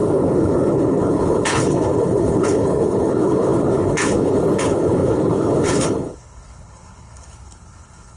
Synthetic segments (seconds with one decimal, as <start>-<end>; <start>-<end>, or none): 0.0-8.2